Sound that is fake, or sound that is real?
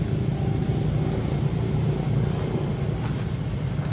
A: real